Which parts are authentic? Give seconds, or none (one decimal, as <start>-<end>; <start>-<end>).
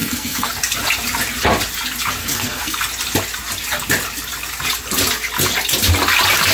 0.5-2.2; 2.8-6.5